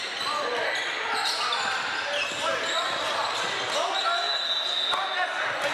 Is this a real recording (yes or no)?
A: yes